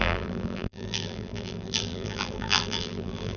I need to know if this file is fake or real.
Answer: fake